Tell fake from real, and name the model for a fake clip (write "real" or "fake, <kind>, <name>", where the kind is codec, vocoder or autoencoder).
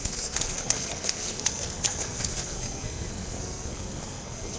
fake, codec, SNAC